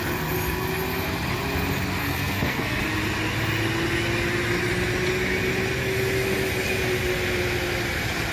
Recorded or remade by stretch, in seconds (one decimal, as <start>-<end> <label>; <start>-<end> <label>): 0.0-2.0 recorded; 2.0-2.8 remade; 2.8-8.3 recorded